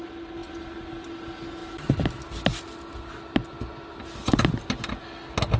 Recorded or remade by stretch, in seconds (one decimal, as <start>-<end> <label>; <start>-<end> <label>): 0.0-5.6 recorded